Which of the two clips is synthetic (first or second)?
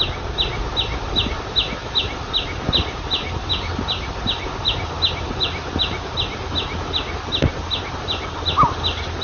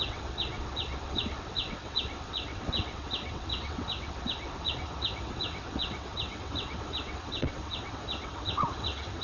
second